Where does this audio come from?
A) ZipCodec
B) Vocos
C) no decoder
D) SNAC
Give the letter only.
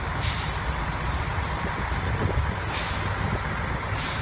C